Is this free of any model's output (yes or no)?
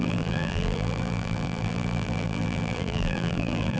no